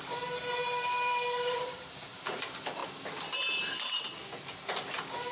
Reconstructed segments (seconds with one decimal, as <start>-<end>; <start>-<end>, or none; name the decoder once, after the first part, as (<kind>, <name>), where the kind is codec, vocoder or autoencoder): 0.0-2.8 (vocoder, BigVGAN v2)